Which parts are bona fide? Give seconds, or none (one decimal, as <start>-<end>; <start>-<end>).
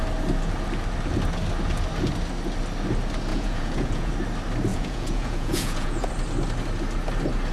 0.0-3.3; 4.1-4.7; 6.1-7.5